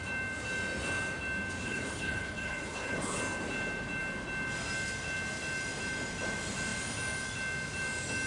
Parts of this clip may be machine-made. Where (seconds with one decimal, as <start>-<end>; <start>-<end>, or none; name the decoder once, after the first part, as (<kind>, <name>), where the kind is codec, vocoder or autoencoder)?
1.6-3.2 (codec, HILCodec)